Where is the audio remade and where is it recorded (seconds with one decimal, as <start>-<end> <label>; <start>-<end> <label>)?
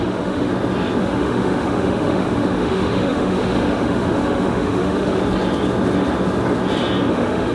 0.0-0.5 remade; 0.5-1.0 recorded; 1.0-5.2 remade; 5.2-7.1 recorded; 7.1-7.5 remade